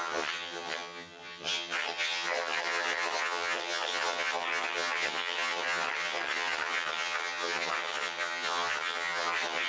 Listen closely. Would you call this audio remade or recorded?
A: remade